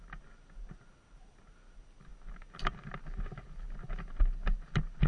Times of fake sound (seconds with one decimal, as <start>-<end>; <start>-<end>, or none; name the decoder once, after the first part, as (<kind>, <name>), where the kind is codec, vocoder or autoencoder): none